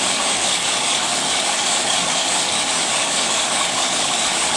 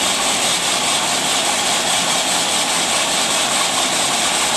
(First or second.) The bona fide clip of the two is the second